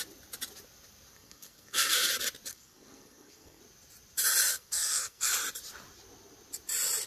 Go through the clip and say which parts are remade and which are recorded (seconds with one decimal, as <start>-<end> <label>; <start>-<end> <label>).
0.0-1.1 recorded; 1.1-2.1 remade; 2.1-2.5 recorded; 2.5-3.6 remade; 3.6-4.5 recorded; 4.5-5.3 remade; 5.3-7.1 recorded